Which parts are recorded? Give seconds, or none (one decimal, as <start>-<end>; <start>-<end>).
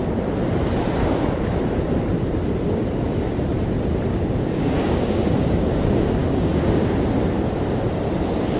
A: 0.0-4.1; 5.5-6.2; 7.0-8.6